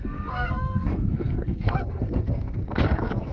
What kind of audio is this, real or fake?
fake